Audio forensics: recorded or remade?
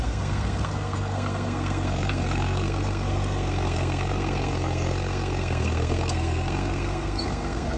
remade